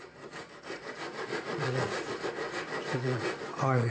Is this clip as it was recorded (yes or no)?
no